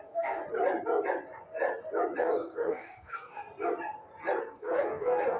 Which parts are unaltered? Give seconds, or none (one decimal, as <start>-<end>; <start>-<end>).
0.4-2.2; 3.4-4.4

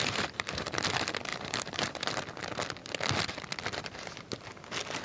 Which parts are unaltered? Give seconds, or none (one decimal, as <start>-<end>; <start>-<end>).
0.7-1.3; 2.1-5.0

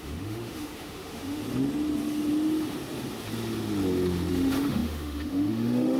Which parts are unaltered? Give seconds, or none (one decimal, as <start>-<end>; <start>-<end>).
1.4-4.3

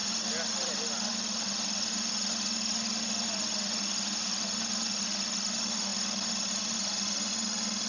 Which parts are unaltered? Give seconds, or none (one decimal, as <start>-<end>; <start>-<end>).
0.0-7.9

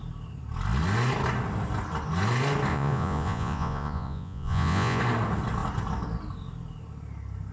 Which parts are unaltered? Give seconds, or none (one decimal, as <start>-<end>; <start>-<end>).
0.0-2.7; 5.0-7.5

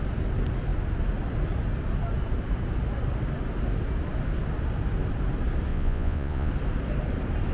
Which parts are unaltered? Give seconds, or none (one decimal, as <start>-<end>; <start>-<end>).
0.0-5.7; 6.5-7.5

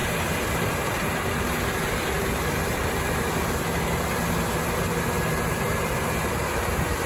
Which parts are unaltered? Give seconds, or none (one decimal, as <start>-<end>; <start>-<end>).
2.9-5.3

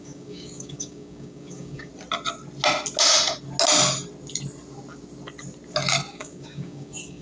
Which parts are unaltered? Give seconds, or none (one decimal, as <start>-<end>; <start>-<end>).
1.9-6.1